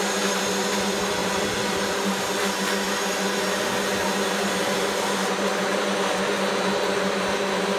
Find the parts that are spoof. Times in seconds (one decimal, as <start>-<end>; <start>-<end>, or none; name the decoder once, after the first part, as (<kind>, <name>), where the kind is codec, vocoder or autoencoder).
1.2-2.6 (vocoder, BigVGAN v2); 5.2-6.1